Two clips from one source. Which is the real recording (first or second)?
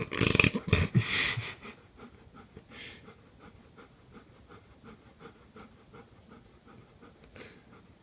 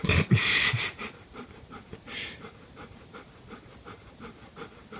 first